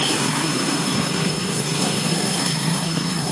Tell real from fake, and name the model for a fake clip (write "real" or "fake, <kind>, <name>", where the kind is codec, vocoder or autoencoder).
fake, codec, SNAC